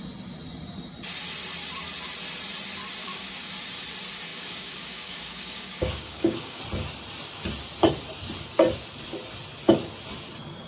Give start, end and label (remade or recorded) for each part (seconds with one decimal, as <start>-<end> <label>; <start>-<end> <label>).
0.0-3.0 recorded; 3.0-3.5 remade; 3.5-4.3 recorded; 4.3-6.6 remade; 6.6-10.7 recorded